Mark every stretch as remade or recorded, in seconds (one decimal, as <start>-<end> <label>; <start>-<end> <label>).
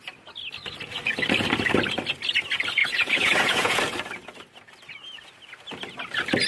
0.0-2.8 recorded; 2.8-3.8 remade; 3.8-6.5 recorded